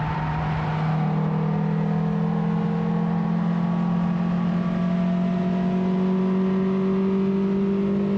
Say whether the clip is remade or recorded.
recorded